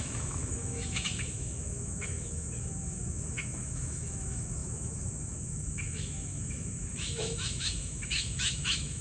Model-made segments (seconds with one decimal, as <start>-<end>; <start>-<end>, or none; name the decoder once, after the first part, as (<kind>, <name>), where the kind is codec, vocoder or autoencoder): 0.0-9.0 (autoencoder, DAC-VAE)